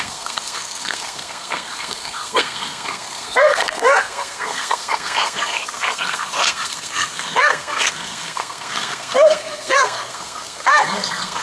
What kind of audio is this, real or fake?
fake